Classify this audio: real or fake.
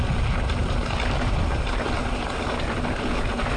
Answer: real